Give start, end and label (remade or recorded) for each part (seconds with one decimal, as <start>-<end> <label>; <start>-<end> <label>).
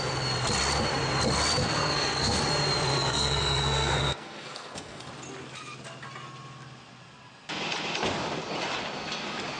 0.0-1.6 recorded; 1.6-2.4 remade; 2.4-2.9 recorded; 2.9-5.1 remade; 5.1-9.6 recorded